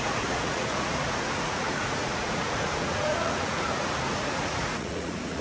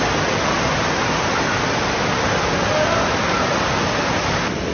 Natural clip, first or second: second